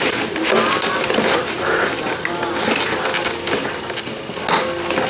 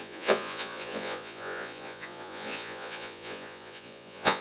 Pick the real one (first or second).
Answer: first